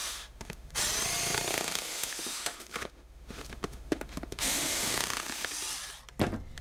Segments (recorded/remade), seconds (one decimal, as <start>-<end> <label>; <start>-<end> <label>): 0.0-0.7 remade; 0.7-1.5 recorded; 1.5-5.5 remade; 5.5-6.6 recorded